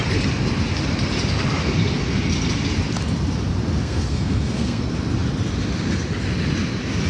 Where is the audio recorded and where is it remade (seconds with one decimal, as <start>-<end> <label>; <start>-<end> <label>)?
0.0-3.8 recorded; 3.8-4.8 remade; 4.8-7.1 recorded